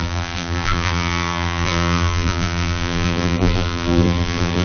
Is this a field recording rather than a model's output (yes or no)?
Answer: no